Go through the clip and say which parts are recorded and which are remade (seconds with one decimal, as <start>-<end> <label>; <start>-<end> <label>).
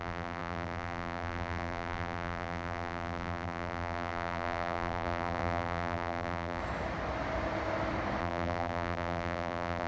0.0-6.6 remade; 6.6-8.2 recorded; 8.2-9.9 remade